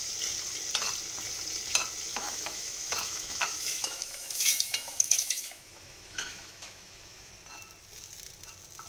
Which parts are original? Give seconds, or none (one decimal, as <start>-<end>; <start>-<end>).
0.0-2.1; 7.3-8.9